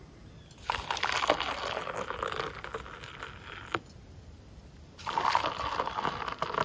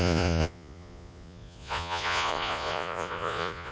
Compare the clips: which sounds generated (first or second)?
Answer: second